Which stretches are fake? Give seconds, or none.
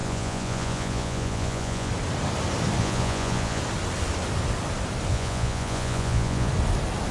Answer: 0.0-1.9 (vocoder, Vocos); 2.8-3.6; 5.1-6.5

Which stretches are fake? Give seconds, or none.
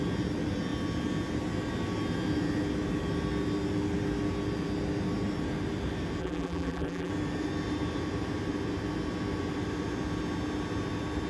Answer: 6.2-7.1 (vocoder, BigVGAN v2)